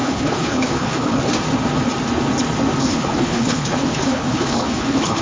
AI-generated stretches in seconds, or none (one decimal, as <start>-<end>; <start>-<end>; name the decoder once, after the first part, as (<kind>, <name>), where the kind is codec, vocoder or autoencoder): 0.0-1.3 (codec, HILCodec); 2.8-5.2